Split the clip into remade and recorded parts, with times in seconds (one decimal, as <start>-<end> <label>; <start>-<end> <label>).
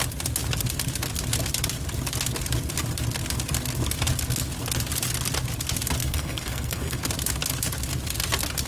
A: 0.0-6.0 recorded; 6.0-7.1 remade; 7.1-8.7 recorded